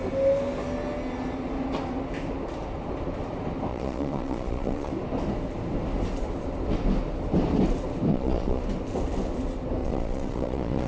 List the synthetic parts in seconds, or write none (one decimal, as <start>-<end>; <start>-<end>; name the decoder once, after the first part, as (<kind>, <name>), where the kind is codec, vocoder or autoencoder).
3.7-4.9 (vocoder, Vocos); 8.1-8.6; 9.8-10.9